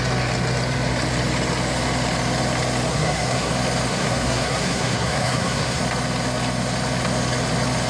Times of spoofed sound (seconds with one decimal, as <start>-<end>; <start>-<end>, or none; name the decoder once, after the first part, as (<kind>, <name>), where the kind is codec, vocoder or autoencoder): 2.9-3.5 (codec, SNAC); 3.9-5.8